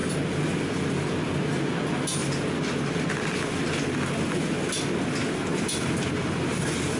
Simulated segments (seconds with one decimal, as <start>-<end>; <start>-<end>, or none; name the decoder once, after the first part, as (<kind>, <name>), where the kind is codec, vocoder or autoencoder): none